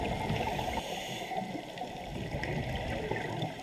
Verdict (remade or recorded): recorded